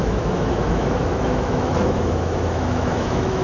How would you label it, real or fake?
fake